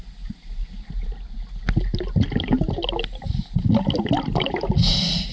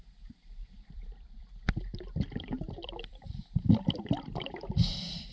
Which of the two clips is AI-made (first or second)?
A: second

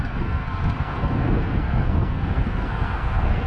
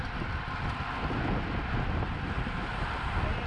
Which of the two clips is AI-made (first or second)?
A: first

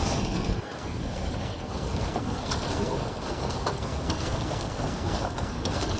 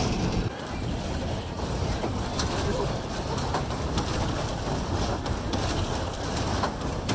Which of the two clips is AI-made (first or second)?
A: first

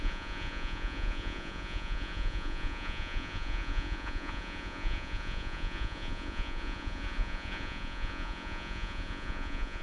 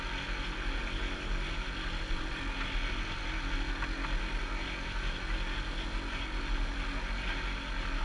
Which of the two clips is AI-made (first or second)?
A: first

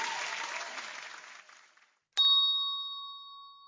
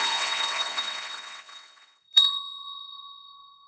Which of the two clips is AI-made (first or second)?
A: second